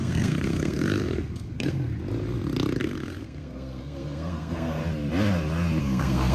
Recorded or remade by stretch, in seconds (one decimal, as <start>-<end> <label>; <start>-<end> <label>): 0.0-1.9 remade; 1.9-2.8 recorded; 2.8-4.8 remade; 4.8-5.8 recorded; 5.8-6.3 remade